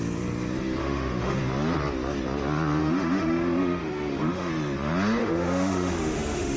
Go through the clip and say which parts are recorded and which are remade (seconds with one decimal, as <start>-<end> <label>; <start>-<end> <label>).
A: 0.0-0.8 recorded; 0.8-1.4 remade; 1.4-2.8 recorded; 2.8-4.5 remade; 4.5-5.2 recorded; 5.2-6.6 remade